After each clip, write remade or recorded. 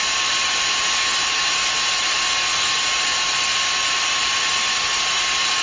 recorded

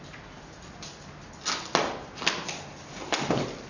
recorded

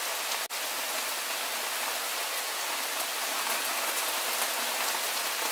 recorded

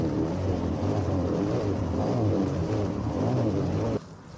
recorded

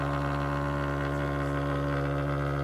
recorded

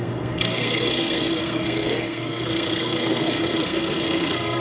remade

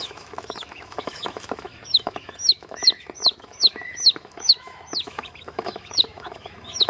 remade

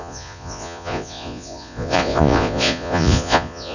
remade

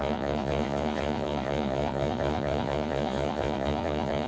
remade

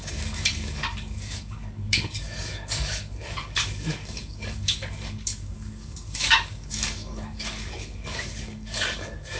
remade